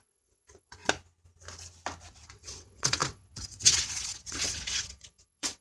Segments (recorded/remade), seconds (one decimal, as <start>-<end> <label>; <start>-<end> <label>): 0.0-0.8 remade; 0.8-2.1 recorded; 2.1-5.6 remade